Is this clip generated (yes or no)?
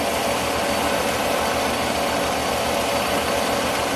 no